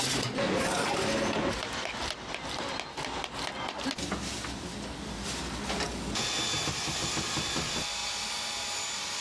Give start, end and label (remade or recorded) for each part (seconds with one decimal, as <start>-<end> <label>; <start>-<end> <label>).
0.0-9.2 recorded